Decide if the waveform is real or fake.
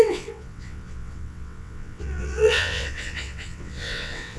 fake